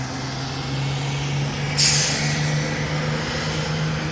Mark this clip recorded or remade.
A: recorded